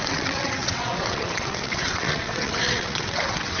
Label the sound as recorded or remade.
remade